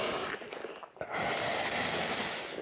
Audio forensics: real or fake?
real